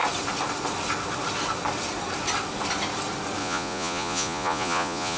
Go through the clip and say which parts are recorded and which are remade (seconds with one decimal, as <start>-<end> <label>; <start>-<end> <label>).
0.0-3.4 recorded; 3.4-5.2 remade